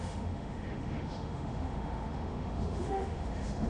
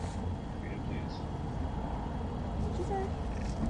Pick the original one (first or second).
second